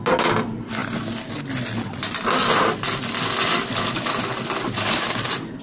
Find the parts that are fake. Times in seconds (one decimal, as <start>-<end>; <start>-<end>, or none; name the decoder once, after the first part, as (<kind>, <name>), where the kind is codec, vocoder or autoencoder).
none